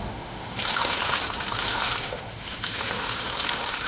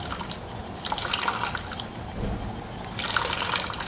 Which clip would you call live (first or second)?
second